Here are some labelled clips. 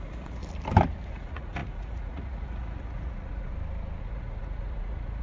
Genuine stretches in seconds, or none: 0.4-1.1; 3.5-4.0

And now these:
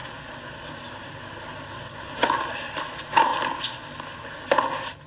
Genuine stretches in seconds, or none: 0.0-5.1

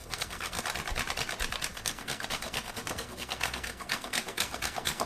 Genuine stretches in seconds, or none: 0.6-1.7